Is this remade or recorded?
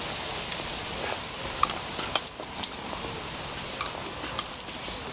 recorded